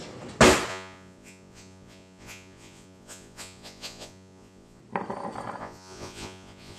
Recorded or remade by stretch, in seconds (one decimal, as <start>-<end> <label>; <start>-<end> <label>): 0.0-0.7 recorded; 0.7-4.8 remade; 4.8-5.6 recorded; 5.6-6.8 remade